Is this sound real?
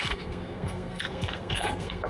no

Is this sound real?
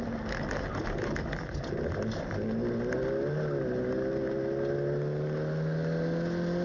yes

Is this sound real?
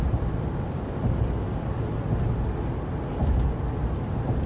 yes